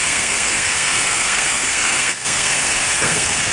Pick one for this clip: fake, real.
fake